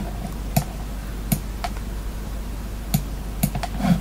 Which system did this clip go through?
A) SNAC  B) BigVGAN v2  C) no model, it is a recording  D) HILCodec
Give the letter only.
C